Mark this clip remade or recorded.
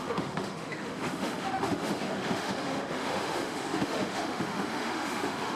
remade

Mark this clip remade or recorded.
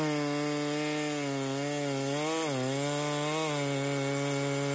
recorded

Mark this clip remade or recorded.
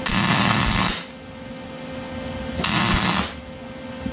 recorded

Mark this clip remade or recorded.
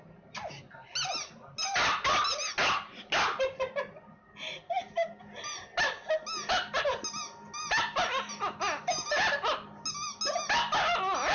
recorded